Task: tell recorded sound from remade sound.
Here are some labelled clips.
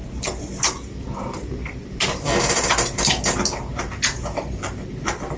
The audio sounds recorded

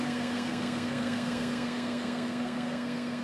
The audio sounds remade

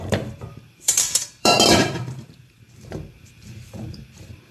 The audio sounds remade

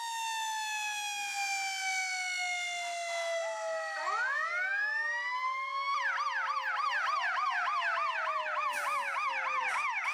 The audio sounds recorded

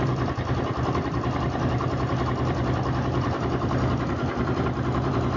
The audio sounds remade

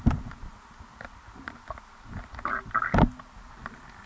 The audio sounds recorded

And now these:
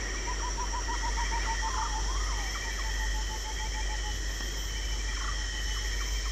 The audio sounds recorded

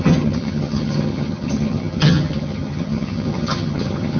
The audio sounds remade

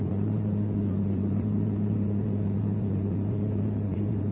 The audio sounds remade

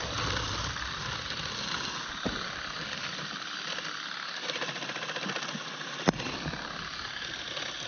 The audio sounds recorded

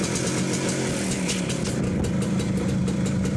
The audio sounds recorded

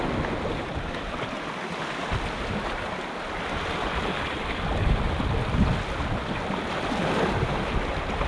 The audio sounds recorded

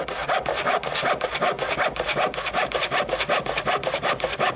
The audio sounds recorded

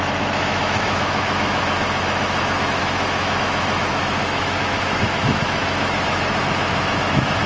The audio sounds remade